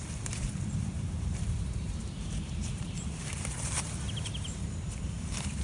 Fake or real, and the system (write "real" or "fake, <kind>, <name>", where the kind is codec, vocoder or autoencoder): fake, vocoder, BigVGAN v2